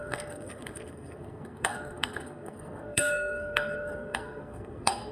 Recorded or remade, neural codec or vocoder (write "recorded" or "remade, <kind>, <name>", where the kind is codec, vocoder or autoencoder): remade, codec, SNAC